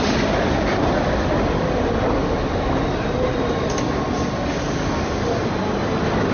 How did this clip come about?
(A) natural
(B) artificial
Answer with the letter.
A